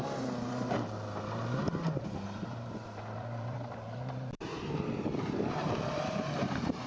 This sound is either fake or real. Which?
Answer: fake